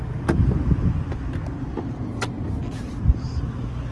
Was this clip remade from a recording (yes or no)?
no